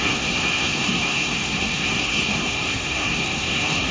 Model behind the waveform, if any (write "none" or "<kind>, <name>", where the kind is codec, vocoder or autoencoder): codec, SNAC